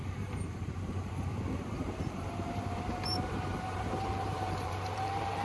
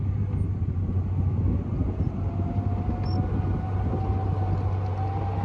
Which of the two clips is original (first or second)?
second